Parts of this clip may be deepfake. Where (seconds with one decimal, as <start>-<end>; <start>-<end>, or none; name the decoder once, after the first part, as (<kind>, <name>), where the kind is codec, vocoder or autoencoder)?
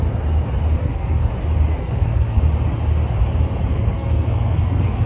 0.8-1.3 (codec, SNAC); 1.8-2.4; 3.7-5.1